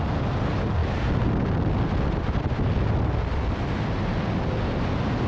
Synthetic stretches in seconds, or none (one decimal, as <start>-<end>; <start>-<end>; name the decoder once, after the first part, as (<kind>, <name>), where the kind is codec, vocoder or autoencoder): none